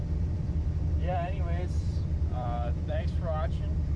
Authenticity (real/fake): fake